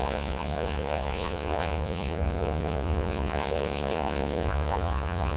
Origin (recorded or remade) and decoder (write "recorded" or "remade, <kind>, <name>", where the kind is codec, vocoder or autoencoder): remade, vocoder, Vocos